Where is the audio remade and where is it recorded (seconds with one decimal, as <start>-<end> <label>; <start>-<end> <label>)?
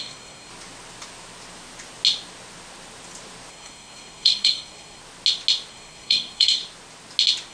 0.0-0.5 remade; 0.5-3.5 recorded; 3.5-5.0 remade; 5.0-5.7 recorded; 5.7-6.6 remade; 6.6-7.5 recorded